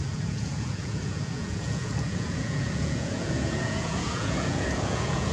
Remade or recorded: remade